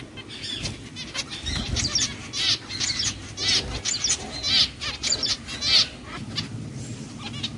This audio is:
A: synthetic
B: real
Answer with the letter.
B